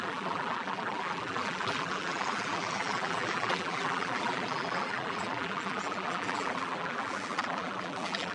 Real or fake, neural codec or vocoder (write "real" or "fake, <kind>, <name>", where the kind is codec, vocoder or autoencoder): fake, vocoder, BigVGAN v2